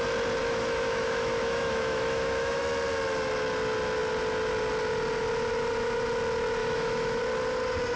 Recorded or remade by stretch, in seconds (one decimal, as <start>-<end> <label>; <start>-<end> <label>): 0.0-0.4 recorded; 0.4-2.6 remade; 2.6-6.6 recorded; 6.6-7.2 remade; 7.2-8.0 recorded